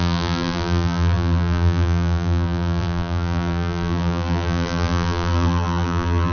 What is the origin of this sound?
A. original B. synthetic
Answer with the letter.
B